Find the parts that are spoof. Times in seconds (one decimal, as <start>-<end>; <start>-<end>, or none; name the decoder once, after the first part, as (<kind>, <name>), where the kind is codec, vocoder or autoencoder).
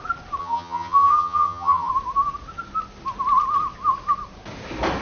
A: 0.4-1.9 (vocoder, HiFi-GAN)